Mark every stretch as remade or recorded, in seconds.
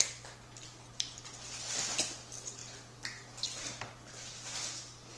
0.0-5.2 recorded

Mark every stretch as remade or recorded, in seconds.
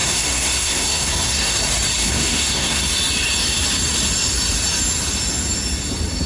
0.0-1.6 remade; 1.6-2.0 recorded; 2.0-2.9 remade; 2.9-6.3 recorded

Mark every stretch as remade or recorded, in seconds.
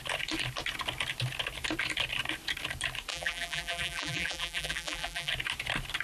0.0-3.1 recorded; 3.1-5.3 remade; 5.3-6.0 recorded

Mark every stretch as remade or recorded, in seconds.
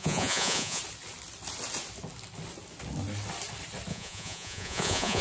0.0-0.8 remade; 0.8-3.9 recorded; 3.9-5.2 remade